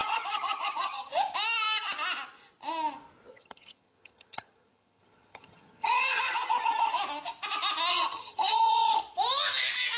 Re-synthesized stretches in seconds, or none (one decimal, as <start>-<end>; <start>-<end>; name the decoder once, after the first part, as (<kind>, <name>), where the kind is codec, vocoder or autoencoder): 0.0-1.1 (vocoder, HiFi-GAN); 3.3-7.0; 7.9-9.0